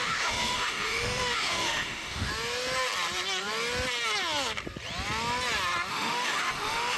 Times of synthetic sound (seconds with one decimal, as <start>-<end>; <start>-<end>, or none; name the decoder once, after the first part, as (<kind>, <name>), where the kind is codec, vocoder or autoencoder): 0.0-2.3 (autoencoder, DAC-VAE); 5.9-7.0